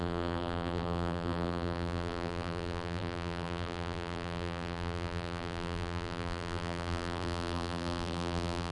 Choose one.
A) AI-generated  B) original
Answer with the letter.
A